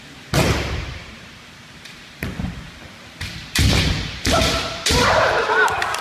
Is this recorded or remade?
remade